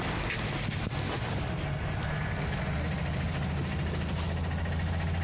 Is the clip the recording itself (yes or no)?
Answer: yes